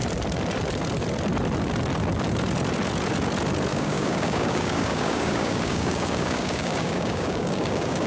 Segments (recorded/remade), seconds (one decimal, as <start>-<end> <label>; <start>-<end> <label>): 0.0-3.7 recorded; 3.7-8.1 remade